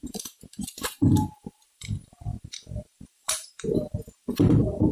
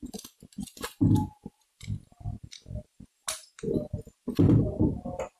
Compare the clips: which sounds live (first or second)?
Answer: second